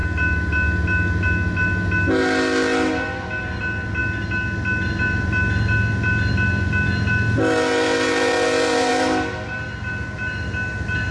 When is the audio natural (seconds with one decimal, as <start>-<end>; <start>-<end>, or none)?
0.0-11.1